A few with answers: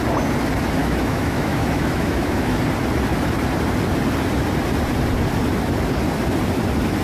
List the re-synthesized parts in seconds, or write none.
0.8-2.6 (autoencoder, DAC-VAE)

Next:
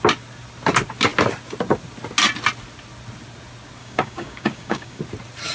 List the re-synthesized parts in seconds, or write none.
3.8-5.0 (codec, DAC)

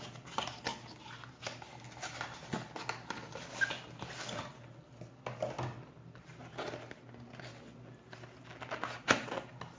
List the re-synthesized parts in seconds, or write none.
none

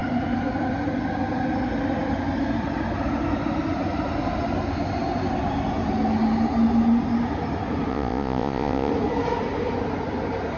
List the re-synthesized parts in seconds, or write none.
7.9-8.9 (vocoder, Vocos)

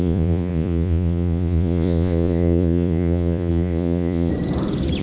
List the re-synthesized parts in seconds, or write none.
0.0-4.3 (vocoder, Vocos)

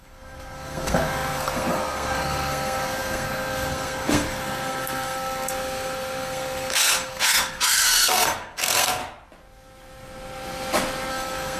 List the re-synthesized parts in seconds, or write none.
0.0-9.0 (codec, SNAC); 11.1-11.6

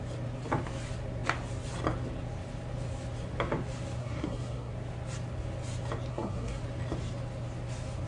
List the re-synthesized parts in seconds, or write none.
4.0-4.7 (codec, SNAC); 6.1-6.6

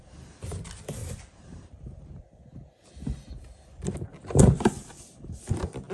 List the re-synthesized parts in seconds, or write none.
1.0-2.2 (vocoder, BigVGAN v2); 4.1-5.4